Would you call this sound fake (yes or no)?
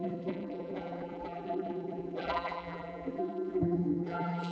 yes